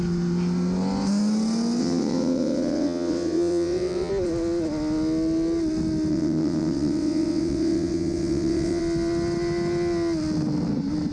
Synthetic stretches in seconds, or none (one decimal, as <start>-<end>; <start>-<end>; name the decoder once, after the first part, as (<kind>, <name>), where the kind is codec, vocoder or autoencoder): 1.8-4.1 (vocoder, WaveNeXt); 6.1-8.8